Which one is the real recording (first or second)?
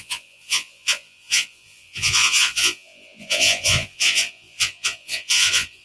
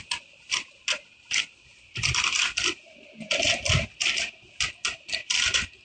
second